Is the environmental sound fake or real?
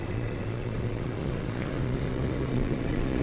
fake